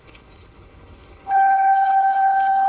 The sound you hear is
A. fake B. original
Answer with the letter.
A